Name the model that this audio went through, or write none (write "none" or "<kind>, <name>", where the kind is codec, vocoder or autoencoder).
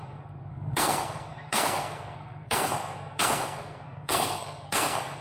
codec, SNAC